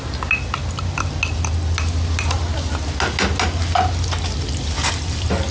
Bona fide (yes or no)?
yes